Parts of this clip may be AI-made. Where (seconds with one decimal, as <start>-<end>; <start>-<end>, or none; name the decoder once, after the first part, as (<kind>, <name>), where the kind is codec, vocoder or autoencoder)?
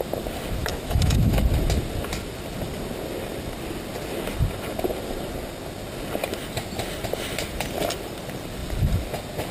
0.6-1.4 (autoencoder, DAC-VAE)